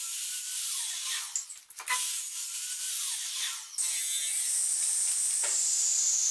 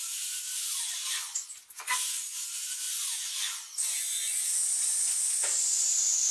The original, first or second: first